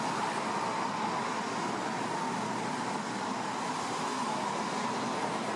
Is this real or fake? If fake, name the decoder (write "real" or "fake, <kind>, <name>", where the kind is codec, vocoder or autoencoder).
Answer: real